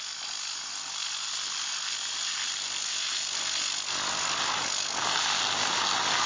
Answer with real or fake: real